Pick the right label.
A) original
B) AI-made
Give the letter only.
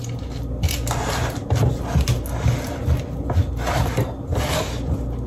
A